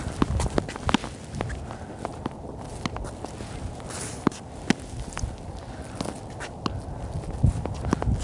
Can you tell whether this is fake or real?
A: real